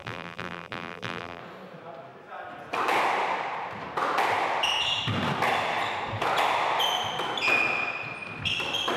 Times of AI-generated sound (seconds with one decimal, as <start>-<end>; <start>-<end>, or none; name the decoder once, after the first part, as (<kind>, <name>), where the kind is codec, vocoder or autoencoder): 0.0-1.4 (vocoder, BigVGAN v2)